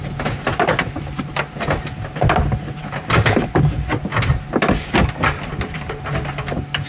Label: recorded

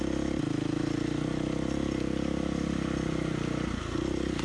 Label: recorded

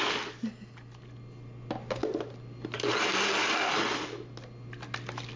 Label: recorded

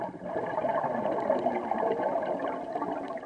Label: recorded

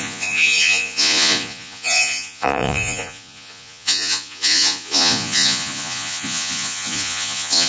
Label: remade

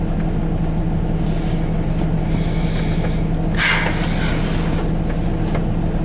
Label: recorded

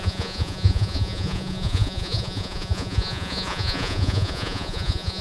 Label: remade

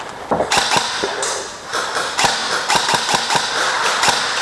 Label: recorded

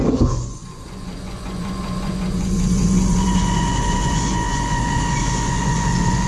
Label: remade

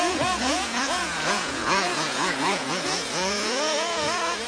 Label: remade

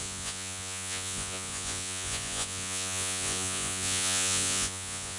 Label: remade